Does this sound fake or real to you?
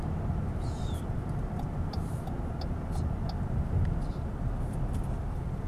real